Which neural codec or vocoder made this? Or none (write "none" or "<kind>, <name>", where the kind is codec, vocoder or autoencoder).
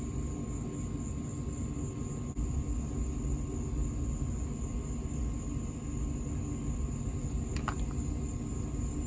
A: none